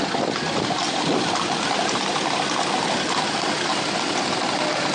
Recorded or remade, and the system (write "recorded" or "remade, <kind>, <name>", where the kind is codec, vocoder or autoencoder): recorded